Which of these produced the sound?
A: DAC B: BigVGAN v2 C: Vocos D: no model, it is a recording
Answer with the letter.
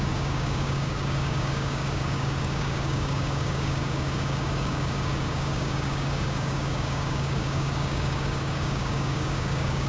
A